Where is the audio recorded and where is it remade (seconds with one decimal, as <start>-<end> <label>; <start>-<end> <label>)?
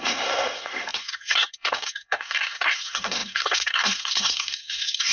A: 0.0-5.1 remade